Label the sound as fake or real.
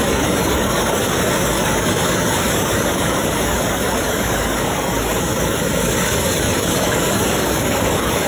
fake